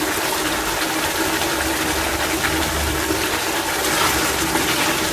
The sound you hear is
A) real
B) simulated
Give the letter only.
A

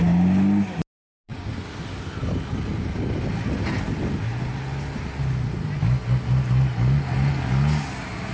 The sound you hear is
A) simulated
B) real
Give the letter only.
B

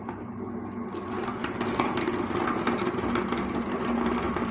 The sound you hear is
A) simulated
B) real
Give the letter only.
B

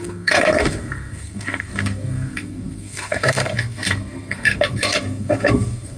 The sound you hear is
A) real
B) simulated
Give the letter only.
B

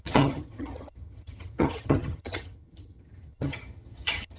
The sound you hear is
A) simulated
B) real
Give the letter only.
A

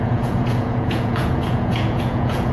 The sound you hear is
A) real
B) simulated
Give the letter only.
B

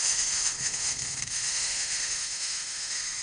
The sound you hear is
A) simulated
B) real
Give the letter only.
A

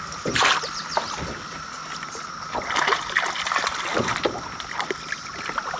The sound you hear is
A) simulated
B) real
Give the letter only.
B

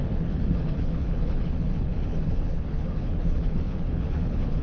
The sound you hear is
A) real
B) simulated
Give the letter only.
B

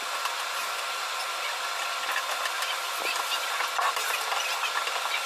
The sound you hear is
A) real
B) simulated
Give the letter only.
A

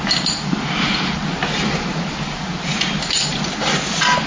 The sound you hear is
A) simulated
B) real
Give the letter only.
B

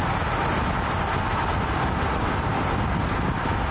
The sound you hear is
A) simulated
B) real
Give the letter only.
B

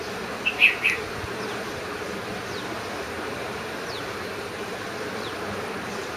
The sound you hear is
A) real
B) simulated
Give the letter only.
A